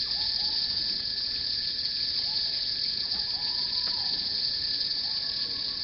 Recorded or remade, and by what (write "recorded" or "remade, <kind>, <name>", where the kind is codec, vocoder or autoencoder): remade, vocoder, Vocos